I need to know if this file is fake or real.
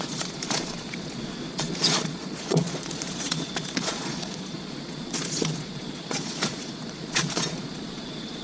fake